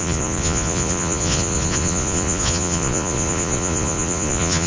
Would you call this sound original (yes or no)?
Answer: no